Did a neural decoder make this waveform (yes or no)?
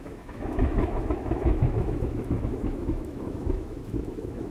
yes